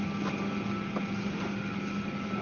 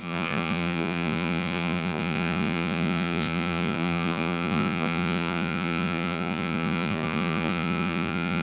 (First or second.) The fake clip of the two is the second